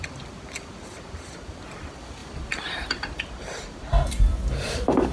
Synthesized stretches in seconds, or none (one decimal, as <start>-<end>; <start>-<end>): 2.2-3.2